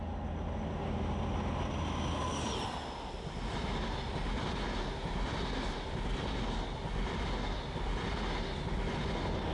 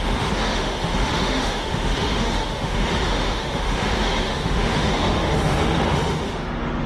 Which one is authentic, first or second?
first